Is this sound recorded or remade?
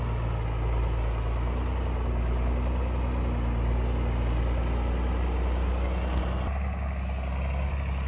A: recorded